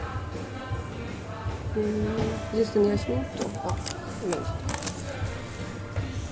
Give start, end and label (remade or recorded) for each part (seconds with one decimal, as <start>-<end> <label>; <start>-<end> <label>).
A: 0.0-6.3 recorded